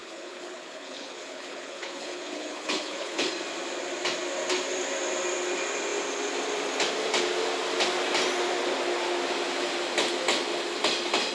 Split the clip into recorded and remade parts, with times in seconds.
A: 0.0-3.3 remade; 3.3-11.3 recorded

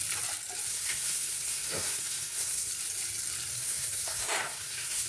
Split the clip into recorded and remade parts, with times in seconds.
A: 0.0-0.7 recorded; 0.7-2.7 remade; 2.7-3.5 recorded; 3.5-5.1 remade

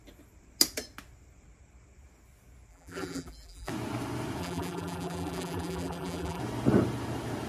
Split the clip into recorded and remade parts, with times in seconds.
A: 0.0-2.7 recorded; 2.7-3.7 remade; 3.7-4.4 recorded; 4.4-6.4 remade; 6.4-7.5 recorded

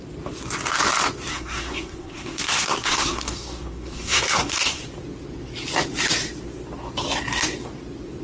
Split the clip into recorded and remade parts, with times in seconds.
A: 0.0-1.3 recorded; 1.3-4.8 remade; 4.8-8.2 recorded

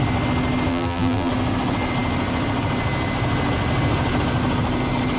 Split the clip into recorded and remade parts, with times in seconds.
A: 0.0-0.7 recorded; 0.7-1.3 remade; 1.3-5.2 recorded

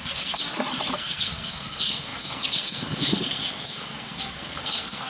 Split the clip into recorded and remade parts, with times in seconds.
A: 0.0-0.4 remade; 0.4-0.9 recorded; 0.9-5.1 remade

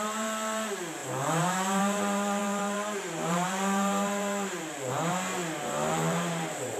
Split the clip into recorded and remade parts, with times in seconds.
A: 0.0-5.4 remade; 5.4-5.9 recorded; 5.9-6.8 remade